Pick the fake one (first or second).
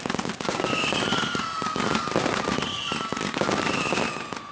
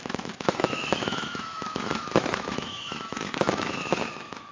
second